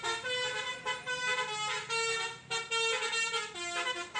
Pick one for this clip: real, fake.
real